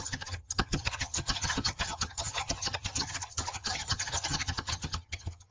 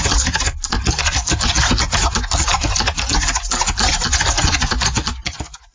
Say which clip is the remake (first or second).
first